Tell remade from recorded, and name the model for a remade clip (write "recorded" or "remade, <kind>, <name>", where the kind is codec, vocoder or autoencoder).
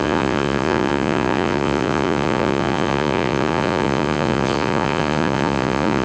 remade, vocoder, Vocos